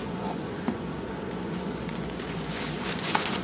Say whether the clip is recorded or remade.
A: remade